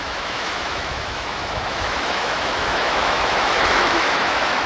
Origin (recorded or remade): remade